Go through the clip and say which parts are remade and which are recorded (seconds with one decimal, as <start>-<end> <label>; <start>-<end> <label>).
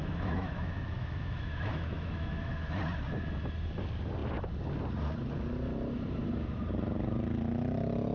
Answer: 0.0-2.8 remade; 2.8-8.1 recorded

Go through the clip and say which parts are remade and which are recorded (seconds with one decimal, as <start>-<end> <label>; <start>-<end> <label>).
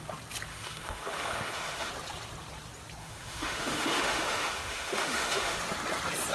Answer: 0.0-0.5 recorded; 0.5-1.9 remade; 1.9-3.0 recorded; 3.0-5.6 remade; 5.6-6.3 recorded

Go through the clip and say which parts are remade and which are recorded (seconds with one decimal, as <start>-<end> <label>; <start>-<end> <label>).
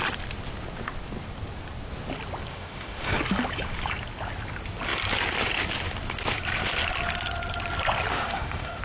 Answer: 0.0-2.5 recorded; 2.5-3.2 remade; 3.2-8.1 recorded; 8.1-8.8 remade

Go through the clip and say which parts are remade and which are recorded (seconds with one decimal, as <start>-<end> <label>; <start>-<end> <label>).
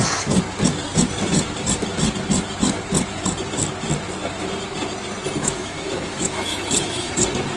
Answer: 0.0-5.4 recorded; 5.4-7.1 remade; 7.1-7.6 recorded